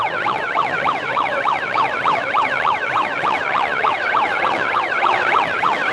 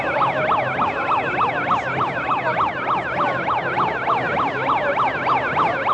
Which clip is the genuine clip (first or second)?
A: second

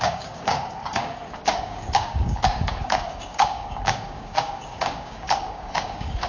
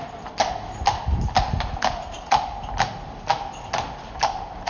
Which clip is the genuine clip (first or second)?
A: second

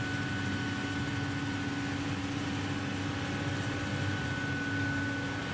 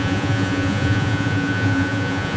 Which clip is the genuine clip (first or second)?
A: first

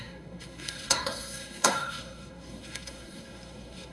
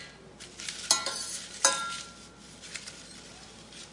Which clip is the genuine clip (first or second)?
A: second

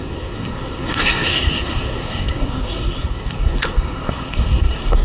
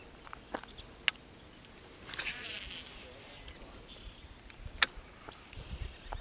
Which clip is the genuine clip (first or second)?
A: second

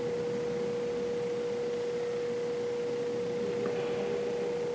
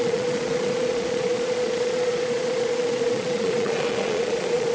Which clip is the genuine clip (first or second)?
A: first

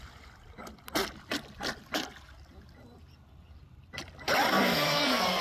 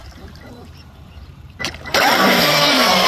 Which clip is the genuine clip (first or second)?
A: first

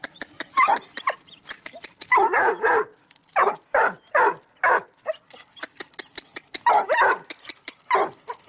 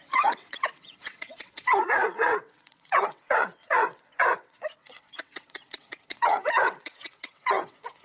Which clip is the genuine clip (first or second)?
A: first